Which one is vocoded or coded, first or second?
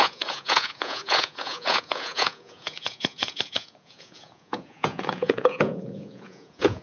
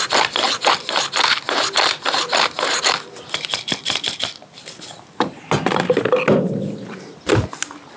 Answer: first